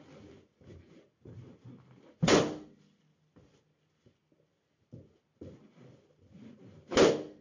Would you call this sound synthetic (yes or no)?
no